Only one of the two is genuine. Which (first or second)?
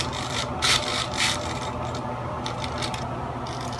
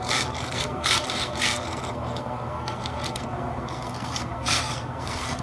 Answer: first